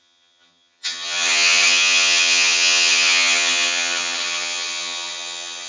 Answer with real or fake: fake